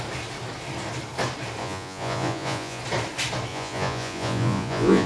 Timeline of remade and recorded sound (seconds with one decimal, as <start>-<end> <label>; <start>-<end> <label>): 0.0-1.6 recorded; 1.6-2.8 remade; 2.8-3.5 recorded; 3.5-5.1 remade